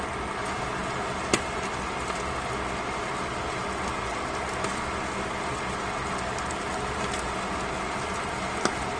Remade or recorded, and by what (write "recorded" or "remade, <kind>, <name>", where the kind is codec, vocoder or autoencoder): recorded